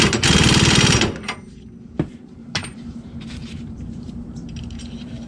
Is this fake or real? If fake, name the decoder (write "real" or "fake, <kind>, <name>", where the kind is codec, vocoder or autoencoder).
fake, vocoder, BigVGAN v2